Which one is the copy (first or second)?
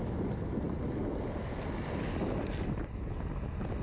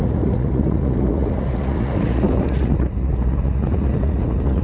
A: second